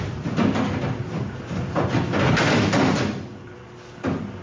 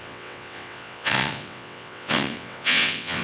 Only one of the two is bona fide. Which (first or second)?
first